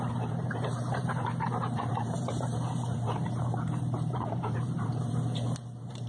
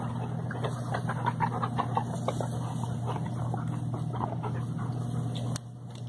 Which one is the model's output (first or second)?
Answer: first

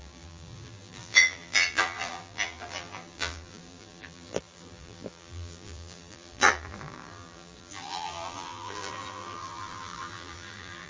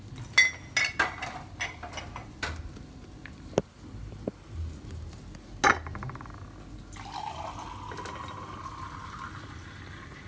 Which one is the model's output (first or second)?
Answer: first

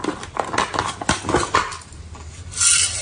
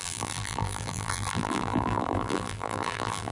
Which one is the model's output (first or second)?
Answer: second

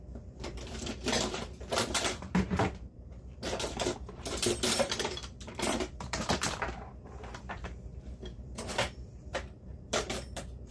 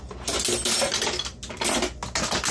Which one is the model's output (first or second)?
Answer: first